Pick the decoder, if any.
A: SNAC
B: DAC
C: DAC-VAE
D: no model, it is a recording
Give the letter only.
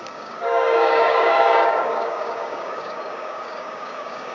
B